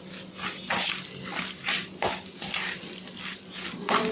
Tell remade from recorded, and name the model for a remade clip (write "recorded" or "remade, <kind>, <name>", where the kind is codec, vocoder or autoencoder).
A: recorded